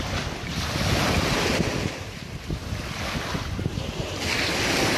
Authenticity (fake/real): real